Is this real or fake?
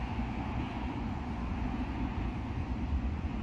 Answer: fake